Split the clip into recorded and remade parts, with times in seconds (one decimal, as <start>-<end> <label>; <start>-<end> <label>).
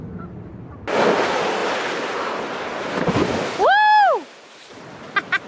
0.0-5.5 recorded